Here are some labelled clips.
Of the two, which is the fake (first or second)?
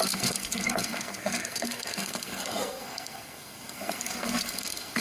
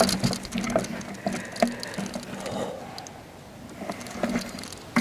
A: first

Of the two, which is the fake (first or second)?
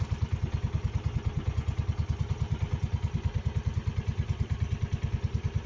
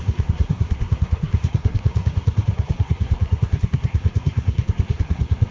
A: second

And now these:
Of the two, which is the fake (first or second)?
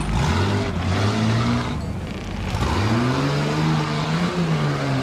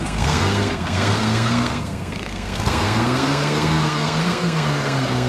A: second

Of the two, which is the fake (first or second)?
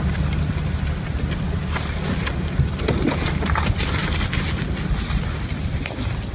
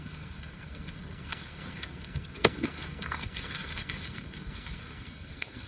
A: second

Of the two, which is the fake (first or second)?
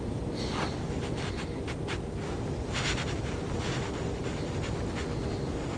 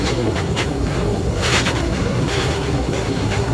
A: second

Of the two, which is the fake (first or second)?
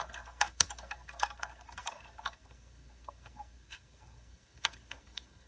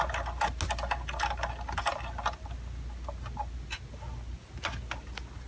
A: first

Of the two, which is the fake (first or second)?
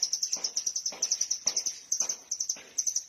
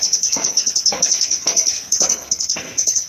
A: second